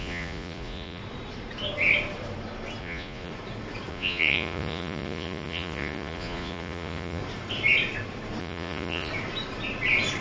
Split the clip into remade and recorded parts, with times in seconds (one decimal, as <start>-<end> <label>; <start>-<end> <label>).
0.0-1.0 remade; 1.0-2.8 recorded; 2.8-3.3 remade; 3.3-3.9 recorded; 3.9-7.2 remade; 7.2-8.4 recorded; 8.4-9.1 remade; 9.1-10.2 recorded